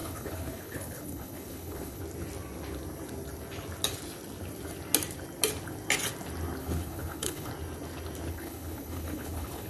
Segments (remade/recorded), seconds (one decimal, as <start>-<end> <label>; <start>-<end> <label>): 0.0-2.0 remade; 2.0-6.6 recorded; 6.6-7.5 remade; 7.5-8.3 recorded; 8.3-9.7 remade